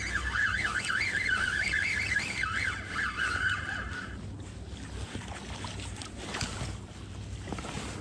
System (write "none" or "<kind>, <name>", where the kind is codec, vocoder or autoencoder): none